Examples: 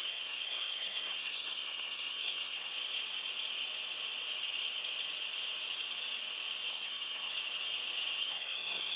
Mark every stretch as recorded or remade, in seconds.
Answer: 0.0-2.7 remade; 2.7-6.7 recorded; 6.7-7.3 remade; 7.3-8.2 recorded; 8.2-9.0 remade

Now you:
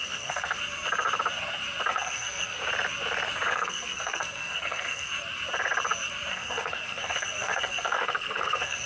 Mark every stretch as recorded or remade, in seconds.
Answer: 0.0-0.6 remade; 0.6-1.9 recorded; 1.9-2.6 remade; 2.6-3.5 recorded; 3.5-5.1 remade; 5.1-6.3 recorded; 6.3-8.9 remade

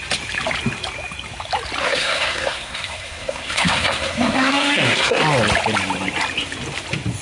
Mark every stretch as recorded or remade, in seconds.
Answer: 0.0-1.8 recorded; 1.8-5.2 remade; 5.2-7.2 recorded

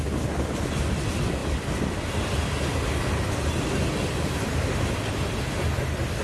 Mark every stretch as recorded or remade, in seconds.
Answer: 0.0-6.2 recorded

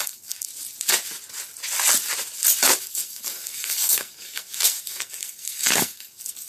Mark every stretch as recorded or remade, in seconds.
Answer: 0.0-0.5 remade; 0.5-2.8 recorded; 2.8-6.5 remade

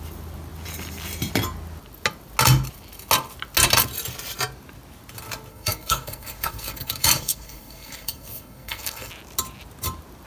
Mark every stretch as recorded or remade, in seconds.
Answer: 0.0-5.5 recorded; 5.5-9.1 remade; 9.1-10.3 recorded

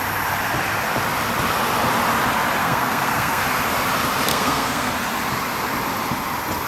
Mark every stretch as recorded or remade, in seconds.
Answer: 0.0-2.6 recorded; 2.6-3.4 remade; 3.4-4.3 recorded; 4.3-4.9 remade; 4.9-6.7 recorded